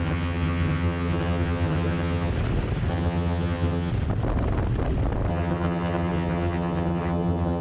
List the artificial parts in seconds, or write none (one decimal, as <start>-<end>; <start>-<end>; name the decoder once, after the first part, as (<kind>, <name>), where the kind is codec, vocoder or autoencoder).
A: 0.0-2.3 (vocoder, HiFi-GAN); 2.9-3.9; 5.3-7.6